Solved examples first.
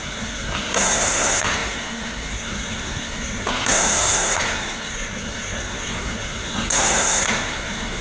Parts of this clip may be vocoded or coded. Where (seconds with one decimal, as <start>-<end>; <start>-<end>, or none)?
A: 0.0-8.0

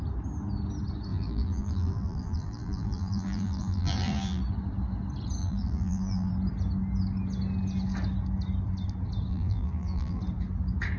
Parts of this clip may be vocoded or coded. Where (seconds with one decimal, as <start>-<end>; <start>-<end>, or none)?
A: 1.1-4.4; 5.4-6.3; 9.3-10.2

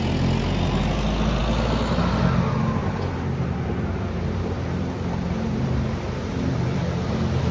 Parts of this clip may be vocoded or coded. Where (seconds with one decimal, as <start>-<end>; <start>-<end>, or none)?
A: 2.8-7.5